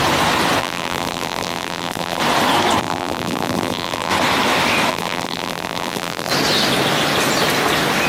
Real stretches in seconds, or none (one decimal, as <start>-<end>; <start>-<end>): 0.0-0.6; 2.2-2.8; 4.1-4.9; 6.3-8.1